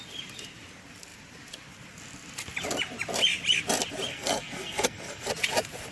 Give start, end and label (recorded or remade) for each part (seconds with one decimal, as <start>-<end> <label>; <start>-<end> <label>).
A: 0.0-4.1 recorded; 4.1-5.3 remade; 5.3-5.9 recorded